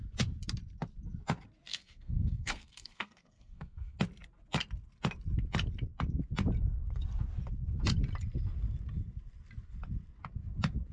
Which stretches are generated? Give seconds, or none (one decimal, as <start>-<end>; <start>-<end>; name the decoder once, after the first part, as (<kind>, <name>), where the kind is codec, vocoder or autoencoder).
1.7-4.0 (codec, SNAC)